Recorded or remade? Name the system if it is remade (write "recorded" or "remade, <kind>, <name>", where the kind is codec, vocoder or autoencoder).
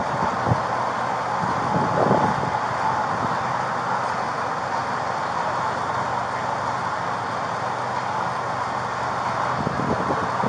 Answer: recorded